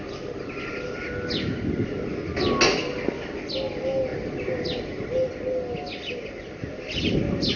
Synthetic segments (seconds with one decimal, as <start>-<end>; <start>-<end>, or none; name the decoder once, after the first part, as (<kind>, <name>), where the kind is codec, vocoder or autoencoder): none